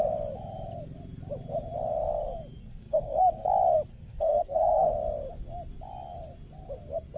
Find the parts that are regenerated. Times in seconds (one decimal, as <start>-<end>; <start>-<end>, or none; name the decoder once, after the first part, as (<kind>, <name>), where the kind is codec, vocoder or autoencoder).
2.6-3.5 (codec, SNAC); 3.9-4.9